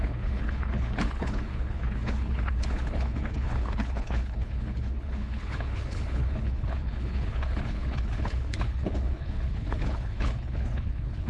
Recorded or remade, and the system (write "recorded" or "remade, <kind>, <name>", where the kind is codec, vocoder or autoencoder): remade, codec, HILCodec